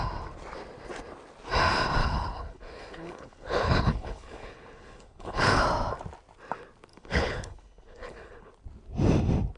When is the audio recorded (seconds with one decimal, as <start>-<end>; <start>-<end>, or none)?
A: 0.0-2.0; 5.6-6.9; 8.5-9.6